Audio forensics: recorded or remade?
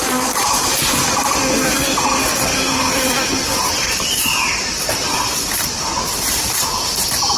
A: recorded